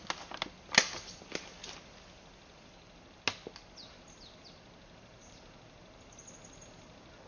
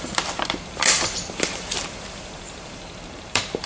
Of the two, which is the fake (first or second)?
second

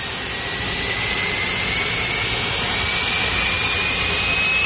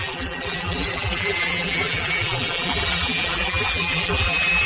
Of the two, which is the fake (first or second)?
second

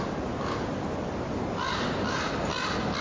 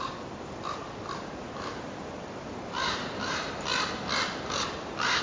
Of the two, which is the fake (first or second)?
second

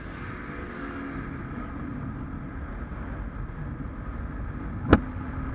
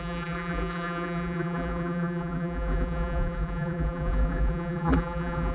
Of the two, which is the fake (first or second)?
second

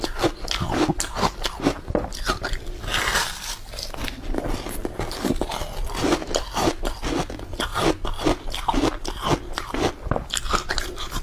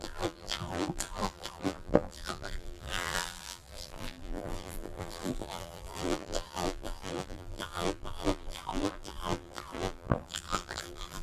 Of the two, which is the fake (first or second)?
second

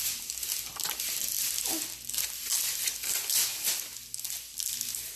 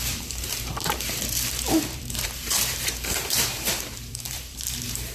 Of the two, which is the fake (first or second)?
second